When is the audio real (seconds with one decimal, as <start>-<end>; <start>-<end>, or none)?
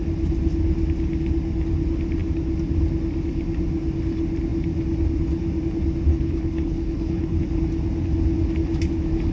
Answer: 0.0-6.1; 7.4-9.3